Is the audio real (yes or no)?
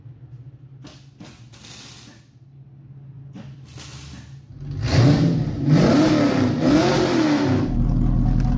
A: yes